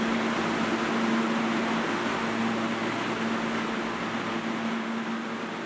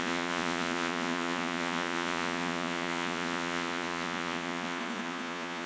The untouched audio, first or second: first